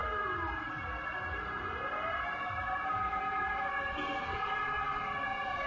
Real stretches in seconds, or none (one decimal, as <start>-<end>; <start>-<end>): 0.0-5.7